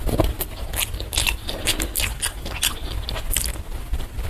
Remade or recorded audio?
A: recorded